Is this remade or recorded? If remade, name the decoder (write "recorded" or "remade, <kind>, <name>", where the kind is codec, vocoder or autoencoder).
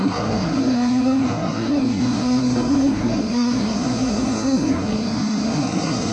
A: remade, codec, SNAC